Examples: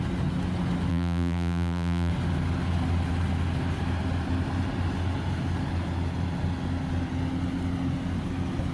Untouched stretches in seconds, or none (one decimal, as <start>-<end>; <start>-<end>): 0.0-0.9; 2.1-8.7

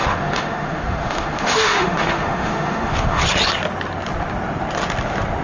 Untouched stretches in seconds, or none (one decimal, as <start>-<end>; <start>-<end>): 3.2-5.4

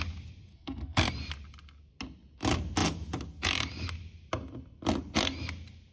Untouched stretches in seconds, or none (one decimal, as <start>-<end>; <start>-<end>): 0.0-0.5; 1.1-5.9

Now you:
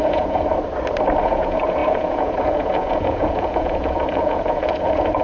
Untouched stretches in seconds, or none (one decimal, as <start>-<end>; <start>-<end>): 0.5-1.2